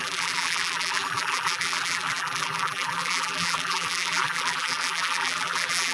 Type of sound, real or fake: fake